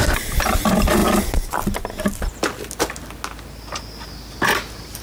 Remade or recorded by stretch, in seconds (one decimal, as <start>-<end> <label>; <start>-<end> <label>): 0.0-5.0 recorded